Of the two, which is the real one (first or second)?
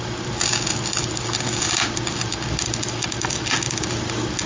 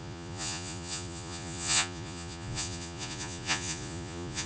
first